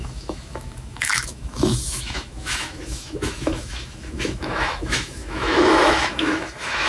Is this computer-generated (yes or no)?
yes